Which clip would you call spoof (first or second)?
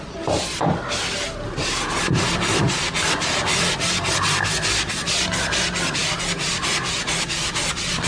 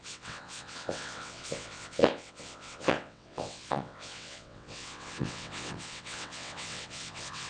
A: second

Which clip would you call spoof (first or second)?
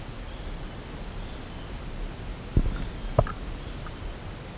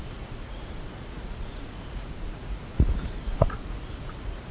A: second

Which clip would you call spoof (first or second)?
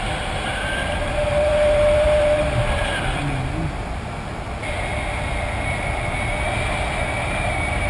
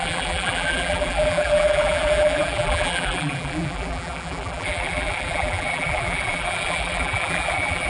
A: second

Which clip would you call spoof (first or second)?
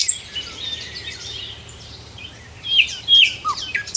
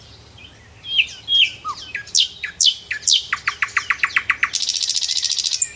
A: first